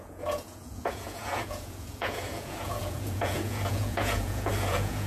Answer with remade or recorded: remade